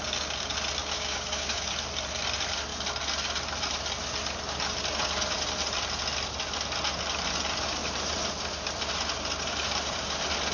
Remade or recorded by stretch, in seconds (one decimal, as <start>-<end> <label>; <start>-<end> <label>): 0.0-0.8 recorded; 0.8-1.7 remade; 1.7-10.5 recorded